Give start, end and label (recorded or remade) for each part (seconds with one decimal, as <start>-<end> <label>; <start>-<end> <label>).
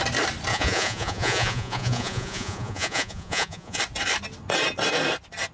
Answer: 0.0-0.5 recorded; 0.5-3.8 remade; 3.8-5.5 recorded